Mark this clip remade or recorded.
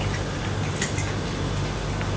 recorded